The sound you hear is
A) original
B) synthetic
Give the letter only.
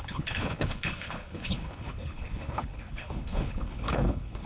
B